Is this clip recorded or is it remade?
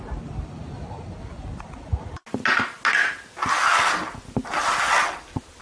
recorded